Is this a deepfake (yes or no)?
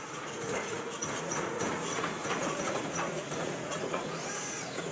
yes